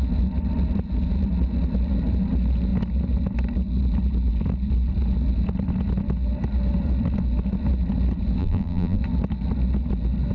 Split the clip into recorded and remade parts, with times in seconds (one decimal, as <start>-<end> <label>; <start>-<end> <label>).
0.0-8.4 recorded; 8.4-9.0 remade; 9.0-10.3 recorded